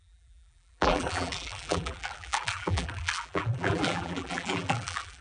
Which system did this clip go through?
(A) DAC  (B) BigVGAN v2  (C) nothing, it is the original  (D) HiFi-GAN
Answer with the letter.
B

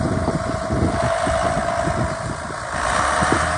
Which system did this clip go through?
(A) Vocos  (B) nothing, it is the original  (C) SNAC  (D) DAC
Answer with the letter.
B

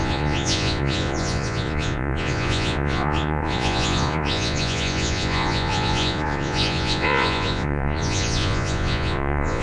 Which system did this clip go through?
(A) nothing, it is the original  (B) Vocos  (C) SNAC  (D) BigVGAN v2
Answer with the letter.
B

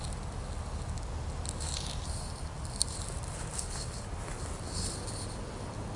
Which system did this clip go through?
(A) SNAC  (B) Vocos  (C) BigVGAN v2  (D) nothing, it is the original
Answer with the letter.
D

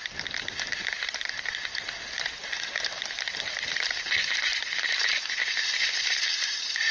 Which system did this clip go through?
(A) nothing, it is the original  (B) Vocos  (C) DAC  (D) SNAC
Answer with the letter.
A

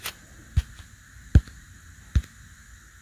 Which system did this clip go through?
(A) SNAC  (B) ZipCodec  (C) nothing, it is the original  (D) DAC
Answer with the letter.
C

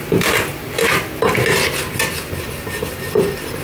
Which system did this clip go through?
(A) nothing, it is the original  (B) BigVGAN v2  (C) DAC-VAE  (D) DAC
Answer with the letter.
A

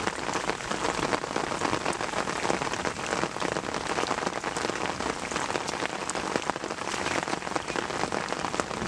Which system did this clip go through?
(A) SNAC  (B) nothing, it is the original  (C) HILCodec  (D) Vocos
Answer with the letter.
B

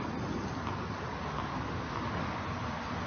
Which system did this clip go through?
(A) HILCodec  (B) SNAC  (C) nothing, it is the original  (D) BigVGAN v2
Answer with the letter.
C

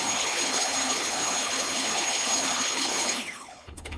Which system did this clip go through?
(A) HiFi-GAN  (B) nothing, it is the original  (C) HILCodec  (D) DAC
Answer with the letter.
C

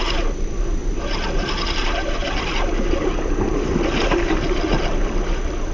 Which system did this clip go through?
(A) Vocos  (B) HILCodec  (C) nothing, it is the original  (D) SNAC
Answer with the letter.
C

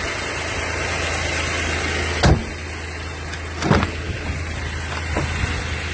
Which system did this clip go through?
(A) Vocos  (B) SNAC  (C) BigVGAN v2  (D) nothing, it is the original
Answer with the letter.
D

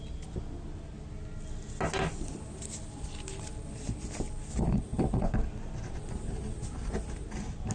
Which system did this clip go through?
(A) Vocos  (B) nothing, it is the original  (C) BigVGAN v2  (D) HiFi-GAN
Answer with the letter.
B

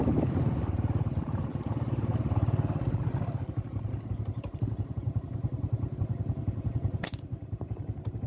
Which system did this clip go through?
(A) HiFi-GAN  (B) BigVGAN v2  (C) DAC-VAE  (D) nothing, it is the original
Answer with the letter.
B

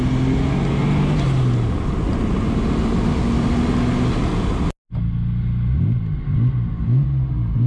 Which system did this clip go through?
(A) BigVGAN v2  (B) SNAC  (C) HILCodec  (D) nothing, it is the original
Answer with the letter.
D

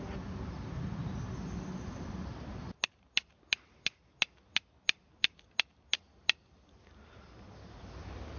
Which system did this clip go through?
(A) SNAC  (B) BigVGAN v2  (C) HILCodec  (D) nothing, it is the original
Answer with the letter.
D